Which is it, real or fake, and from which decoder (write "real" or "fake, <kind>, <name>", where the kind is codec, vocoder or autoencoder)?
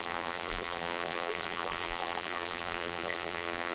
fake, vocoder, BigVGAN v2